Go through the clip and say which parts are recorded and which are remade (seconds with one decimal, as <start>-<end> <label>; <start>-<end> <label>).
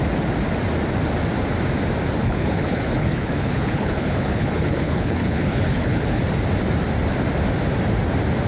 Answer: 0.0-2.2 recorded; 2.2-6.2 remade; 6.2-8.5 recorded